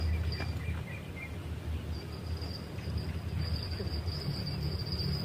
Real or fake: real